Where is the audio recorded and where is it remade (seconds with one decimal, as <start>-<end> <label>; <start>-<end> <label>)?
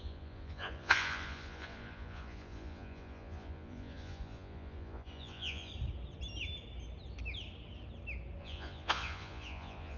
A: 0.0-5.7 remade; 5.7-8.4 recorded; 8.4-10.0 remade